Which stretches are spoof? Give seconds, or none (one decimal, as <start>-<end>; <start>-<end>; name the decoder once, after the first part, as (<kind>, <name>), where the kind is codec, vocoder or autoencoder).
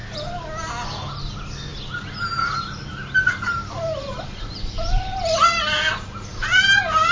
none